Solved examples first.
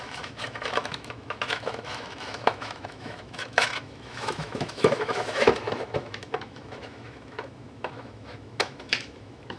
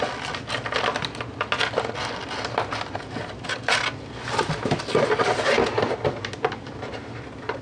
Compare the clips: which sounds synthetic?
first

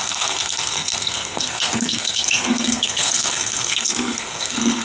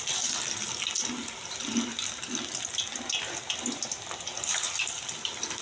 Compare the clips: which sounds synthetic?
first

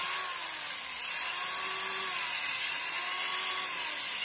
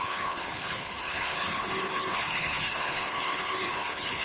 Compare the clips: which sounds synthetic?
second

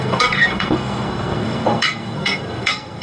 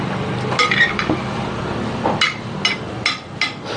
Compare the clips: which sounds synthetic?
first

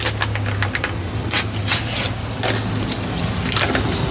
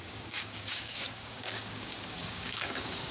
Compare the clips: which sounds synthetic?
second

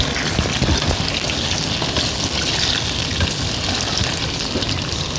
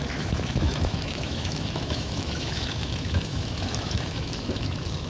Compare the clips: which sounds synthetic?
second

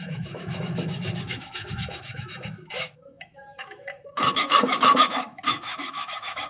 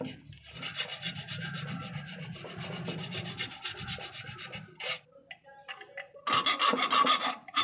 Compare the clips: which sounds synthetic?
first